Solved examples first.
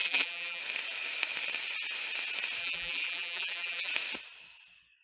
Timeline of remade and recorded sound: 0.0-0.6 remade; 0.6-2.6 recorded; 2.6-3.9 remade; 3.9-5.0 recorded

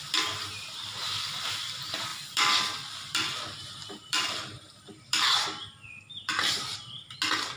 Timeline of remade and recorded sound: 0.0-2.1 recorded; 2.1-6.6 remade; 6.6-7.6 recorded

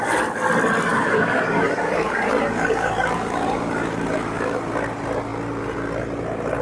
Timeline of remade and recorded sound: 0.0-0.9 recorded; 0.9-4.6 remade; 4.6-6.6 recorded

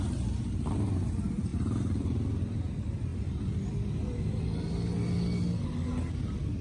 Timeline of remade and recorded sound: 0.0-6.6 recorded

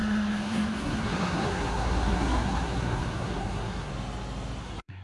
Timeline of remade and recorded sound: 0.0-3.9 remade; 3.9-4.6 recorded; 4.6-5.0 remade